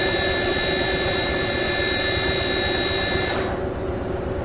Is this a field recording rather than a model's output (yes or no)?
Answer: yes